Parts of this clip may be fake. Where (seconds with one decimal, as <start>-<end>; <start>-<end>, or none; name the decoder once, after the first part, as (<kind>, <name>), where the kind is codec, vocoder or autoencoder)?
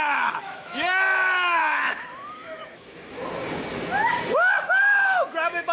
0.0-3.2 (autoencoder, DAC-VAE); 4.8-5.7